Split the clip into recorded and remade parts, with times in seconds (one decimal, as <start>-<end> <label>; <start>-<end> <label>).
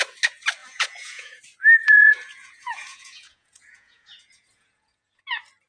0.0-0.6 recorded; 0.6-1.4 remade; 1.4-1.8 recorded; 1.8-5.2 remade; 5.2-5.7 recorded